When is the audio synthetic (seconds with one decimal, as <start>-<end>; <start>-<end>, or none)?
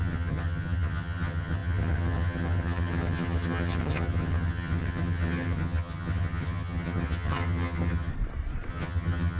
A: 0.0-8.1; 8.7-9.4